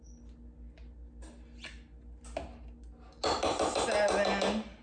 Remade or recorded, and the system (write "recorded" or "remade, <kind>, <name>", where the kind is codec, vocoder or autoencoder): recorded